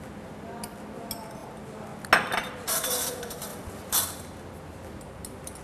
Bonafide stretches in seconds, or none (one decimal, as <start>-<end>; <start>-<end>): 0.0-3.5; 4.0-5.6

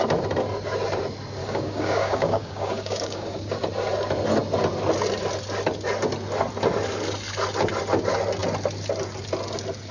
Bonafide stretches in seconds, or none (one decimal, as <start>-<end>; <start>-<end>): 0.0-1.4; 3.6-9.9

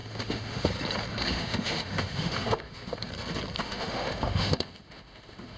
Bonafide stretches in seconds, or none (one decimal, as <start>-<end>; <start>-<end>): 0.7-1.1; 3.1-3.6

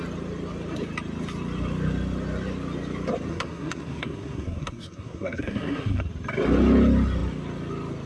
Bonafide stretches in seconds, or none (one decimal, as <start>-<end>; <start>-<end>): 0.0-3.3; 6.0-8.1

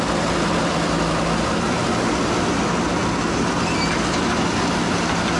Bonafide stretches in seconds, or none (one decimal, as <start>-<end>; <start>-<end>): 0.0-5.4

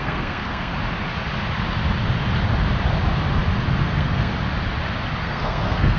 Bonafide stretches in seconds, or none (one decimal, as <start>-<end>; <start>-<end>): 0.7-3.8; 4.3-5.2